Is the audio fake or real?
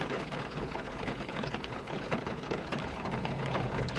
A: fake